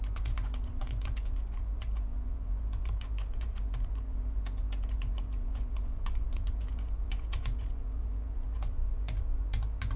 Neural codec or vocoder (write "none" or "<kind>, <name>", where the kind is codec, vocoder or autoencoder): vocoder, Vocos